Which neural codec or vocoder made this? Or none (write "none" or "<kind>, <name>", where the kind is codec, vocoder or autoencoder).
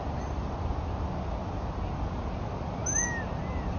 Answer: none